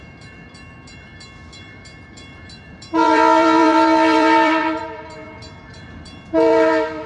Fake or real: fake